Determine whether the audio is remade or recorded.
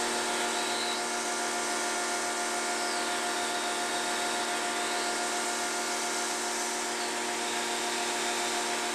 recorded